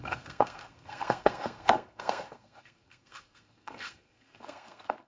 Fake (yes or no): yes